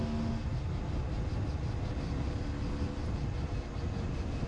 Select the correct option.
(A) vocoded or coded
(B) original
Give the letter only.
B